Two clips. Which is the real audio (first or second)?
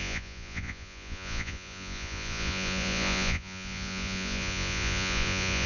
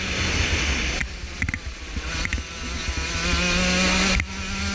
second